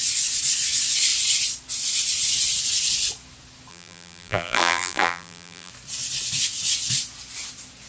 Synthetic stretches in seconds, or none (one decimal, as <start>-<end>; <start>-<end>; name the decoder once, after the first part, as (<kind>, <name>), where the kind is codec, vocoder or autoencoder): 3.7-5.7 (vocoder, BigVGAN v2)